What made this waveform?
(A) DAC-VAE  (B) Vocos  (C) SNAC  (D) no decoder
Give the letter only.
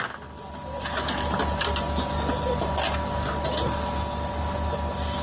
D